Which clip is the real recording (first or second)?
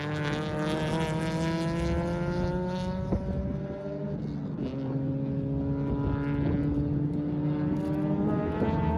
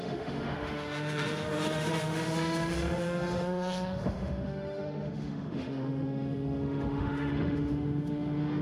first